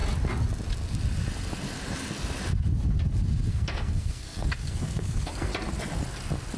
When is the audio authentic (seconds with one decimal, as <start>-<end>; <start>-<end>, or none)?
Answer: 0.0-3.5; 5.5-6.6